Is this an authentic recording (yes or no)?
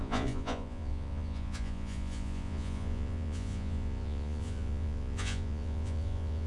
no